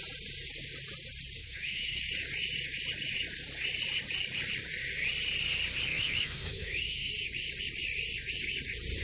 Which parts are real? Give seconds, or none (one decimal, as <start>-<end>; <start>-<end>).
0.0-1.4; 2.0-5.9; 7.1-9.0